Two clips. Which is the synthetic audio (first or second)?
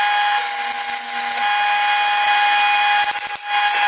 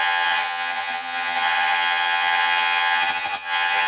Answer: second